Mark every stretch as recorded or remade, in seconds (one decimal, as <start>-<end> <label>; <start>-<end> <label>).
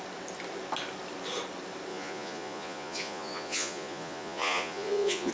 0.0-1.9 recorded; 1.9-5.3 remade